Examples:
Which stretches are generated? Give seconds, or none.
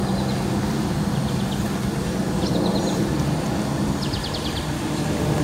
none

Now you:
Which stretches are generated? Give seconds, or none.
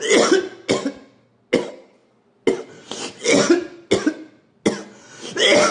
none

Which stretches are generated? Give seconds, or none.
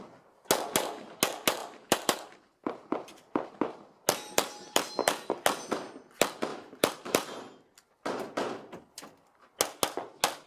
1.6-4.9 (vocoder, BigVGAN v2); 6.5-7.9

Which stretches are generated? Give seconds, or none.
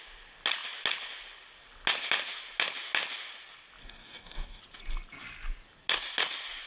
3.8-4.6 (codec, DAC)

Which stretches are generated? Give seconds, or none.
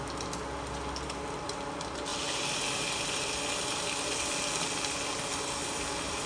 5.6-6.3 (vocoder, BigVGAN v2)